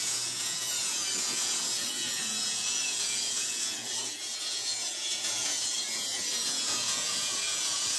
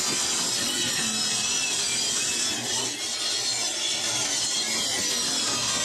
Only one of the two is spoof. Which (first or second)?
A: first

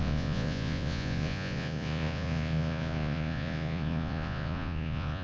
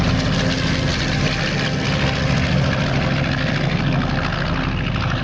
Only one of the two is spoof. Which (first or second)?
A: first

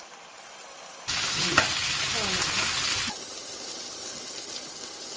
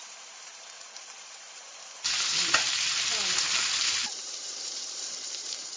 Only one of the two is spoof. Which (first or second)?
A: second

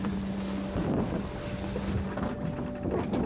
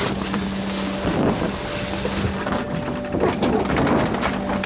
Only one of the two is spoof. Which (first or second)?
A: first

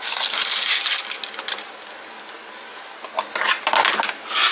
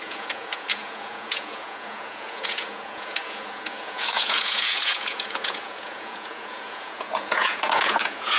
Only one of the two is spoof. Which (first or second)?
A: second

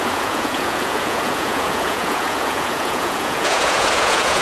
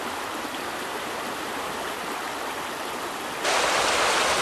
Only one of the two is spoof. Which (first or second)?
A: first